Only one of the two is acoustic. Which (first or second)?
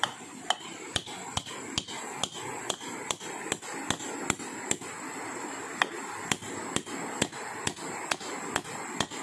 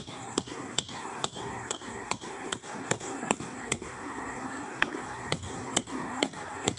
first